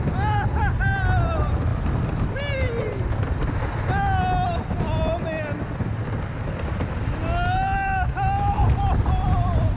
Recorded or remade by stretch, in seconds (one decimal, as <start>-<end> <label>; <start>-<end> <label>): 0.0-9.8 recorded